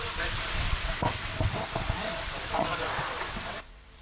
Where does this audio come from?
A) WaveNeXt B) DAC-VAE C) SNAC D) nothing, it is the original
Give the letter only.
A